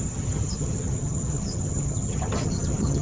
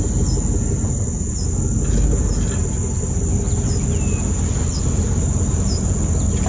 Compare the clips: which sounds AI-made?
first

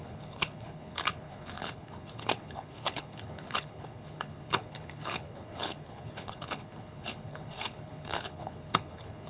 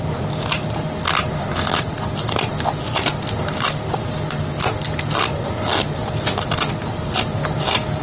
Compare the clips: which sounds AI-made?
first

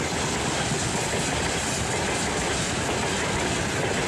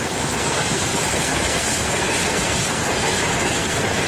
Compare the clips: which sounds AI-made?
second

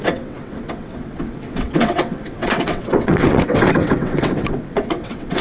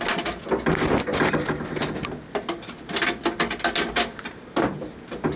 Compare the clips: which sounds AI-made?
first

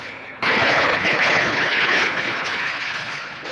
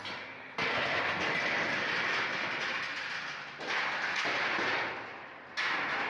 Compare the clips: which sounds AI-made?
first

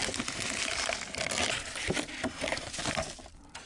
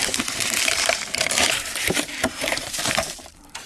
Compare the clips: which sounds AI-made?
second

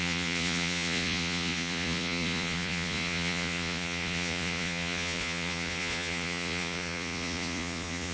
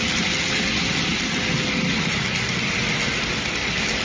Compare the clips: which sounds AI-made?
first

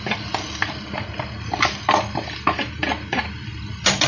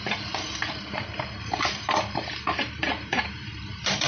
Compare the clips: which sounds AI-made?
second